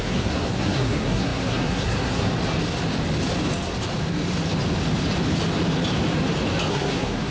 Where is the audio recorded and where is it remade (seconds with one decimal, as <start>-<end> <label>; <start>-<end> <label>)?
0.0-2.3 remade; 2.3-6.7 recorded; 6.7-7.3 remade